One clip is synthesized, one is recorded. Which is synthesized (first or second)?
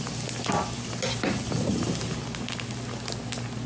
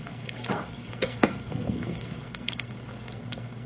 second